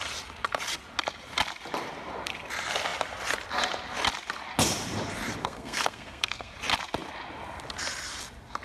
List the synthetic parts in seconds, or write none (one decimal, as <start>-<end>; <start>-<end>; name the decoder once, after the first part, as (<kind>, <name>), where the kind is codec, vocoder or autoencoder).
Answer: 5.4-6.5 (codec, SNAC)

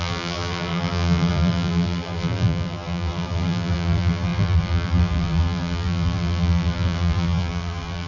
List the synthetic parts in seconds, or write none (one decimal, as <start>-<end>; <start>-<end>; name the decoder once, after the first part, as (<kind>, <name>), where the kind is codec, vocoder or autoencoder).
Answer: 0.0-8.1 (vocoder, BigVGAN v2)